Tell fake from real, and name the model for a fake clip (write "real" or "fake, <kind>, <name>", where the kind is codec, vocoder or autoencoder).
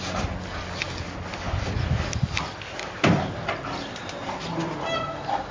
real